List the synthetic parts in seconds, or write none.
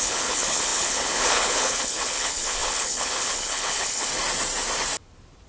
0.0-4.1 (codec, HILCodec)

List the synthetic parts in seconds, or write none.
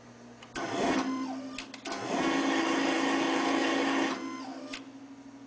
2.4-4.1 (codec, HILCodec)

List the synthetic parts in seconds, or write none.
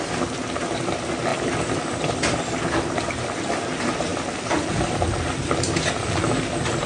none